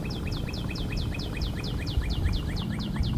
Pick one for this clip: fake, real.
real